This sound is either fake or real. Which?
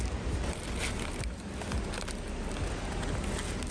real